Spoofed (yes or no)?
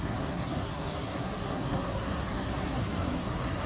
yes